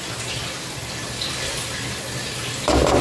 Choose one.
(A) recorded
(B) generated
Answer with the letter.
A